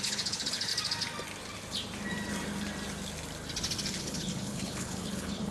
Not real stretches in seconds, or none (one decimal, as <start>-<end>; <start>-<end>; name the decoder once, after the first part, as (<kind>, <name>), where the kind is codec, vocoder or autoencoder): 0.0-0.7 (codec, HILCodec); 4.0-5.5